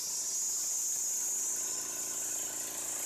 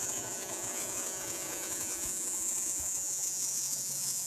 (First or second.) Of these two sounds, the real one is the first